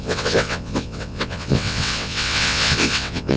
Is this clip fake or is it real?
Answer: fake